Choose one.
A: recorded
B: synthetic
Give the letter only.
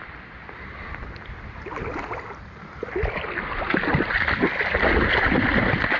A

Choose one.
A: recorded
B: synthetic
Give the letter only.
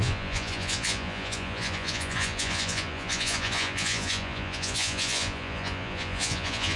B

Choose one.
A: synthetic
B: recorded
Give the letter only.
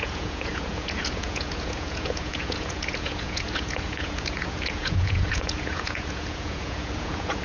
A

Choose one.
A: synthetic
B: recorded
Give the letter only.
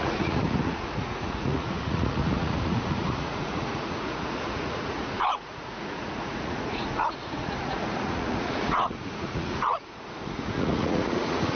A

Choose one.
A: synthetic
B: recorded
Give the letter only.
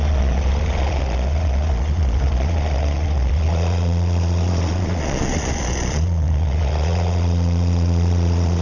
A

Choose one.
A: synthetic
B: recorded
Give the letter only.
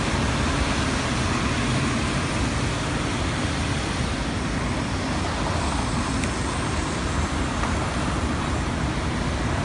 B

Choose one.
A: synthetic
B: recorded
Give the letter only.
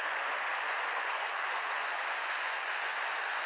A